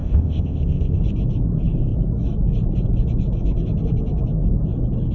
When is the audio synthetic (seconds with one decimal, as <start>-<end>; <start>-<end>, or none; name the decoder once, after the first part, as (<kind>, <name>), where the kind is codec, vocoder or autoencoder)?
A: 0.0-1.0 (codec, ZipCodec)